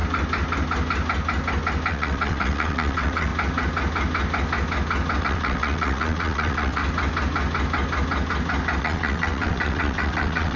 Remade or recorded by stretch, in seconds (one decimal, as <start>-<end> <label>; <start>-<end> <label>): 0.0-1.9 recorded; 1.9-3.3 remade; 3.3-5.2 recorded; 5.2-6.8 remade; 6.8-8.8 recorded; 8.8-10.6 remade